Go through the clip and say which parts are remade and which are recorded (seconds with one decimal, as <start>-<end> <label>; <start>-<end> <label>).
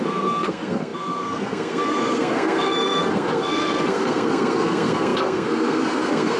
0.0-6.4 remade